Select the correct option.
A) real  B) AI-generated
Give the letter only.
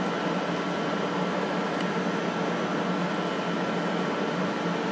A